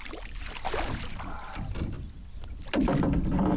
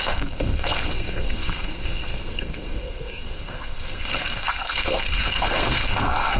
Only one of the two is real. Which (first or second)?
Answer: first